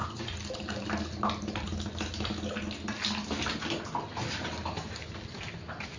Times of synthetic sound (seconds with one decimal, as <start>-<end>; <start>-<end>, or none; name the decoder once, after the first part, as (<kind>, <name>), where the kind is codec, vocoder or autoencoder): none

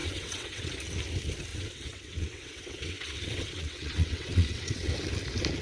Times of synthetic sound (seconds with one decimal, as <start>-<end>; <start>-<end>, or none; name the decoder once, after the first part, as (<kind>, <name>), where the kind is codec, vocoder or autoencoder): 0.0-0.7 (vocoder, WaveNeXt); 1.5-4.9

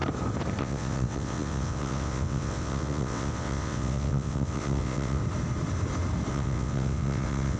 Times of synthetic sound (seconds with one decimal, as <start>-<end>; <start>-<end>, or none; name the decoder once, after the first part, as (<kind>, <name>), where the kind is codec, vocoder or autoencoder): 0.6-5.2 (vocoder, WaveNeXt); 6.3-7.6

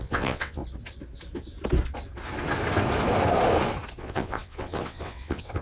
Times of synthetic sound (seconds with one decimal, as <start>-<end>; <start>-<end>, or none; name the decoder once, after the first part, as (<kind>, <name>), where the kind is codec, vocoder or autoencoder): 0.0-0.6 (vocoder, WaveNeXt); 4.0-5.6

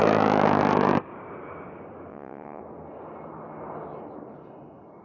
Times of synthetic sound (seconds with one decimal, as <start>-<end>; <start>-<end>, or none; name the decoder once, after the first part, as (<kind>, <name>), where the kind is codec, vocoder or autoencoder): 2.1-2.6 (vocoder, WaveNeXt)

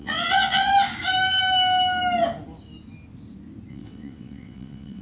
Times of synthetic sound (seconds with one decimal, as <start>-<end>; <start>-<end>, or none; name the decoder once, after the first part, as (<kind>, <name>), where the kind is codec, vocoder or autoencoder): 0.0-0.7 (vocoder, WaveNeXt); 3.7-5.0

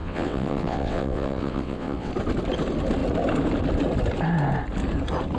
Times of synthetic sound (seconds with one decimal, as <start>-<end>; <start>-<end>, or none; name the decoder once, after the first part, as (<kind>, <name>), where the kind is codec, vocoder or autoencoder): 0.0-2.1 (vocoder, WaveNeXt)

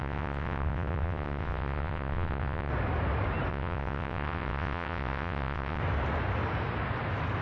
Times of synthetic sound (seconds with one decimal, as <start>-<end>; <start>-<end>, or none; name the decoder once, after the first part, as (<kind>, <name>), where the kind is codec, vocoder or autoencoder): 0.0-2.7 (vocoder, WaveNeXt); 3.5-5.8